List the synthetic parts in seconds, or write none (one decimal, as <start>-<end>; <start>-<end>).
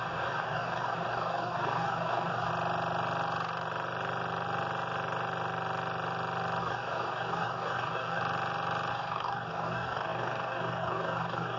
0.0-2.5; 6.6-8.2; 8.9-11.6